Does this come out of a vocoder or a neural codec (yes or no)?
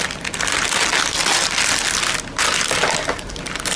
no